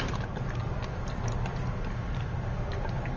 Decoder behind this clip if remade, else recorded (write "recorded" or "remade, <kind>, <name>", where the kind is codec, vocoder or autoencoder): recorded